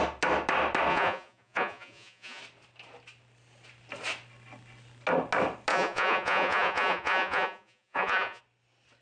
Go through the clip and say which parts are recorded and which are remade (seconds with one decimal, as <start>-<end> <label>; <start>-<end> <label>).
0.0-0.9 recorded; 0.9-2.4 remade; 2.4-5.7 recorded; 5.7-8.4 remade; 8.4-9.0 recorded